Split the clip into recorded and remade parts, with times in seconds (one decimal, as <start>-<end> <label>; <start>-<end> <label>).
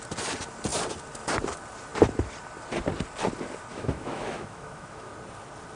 0.0-3.7 recorded; 3.7-5.1 remade; 5.1-5.8 recorded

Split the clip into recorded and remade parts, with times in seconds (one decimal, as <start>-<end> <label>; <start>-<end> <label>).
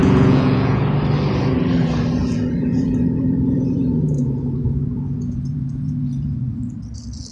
0.0-0.8 remade; 0.8-2.2 recorded; 2.2-6.6 remade; 6.6-7.3 recorded